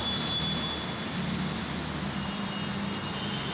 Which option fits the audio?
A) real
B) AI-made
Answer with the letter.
A